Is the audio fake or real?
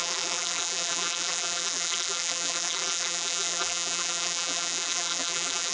fake